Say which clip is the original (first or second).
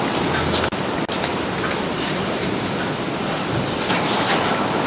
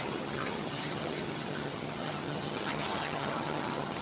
first